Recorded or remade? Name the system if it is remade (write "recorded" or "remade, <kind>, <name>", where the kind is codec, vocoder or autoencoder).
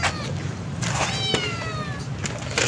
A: recorded